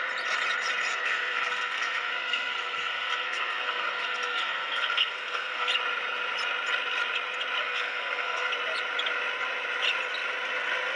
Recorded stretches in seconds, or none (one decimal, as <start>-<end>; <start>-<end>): 0.0-0.9; 5.7-7.6; 8.5-11.0